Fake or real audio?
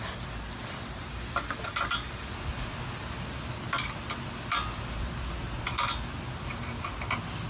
real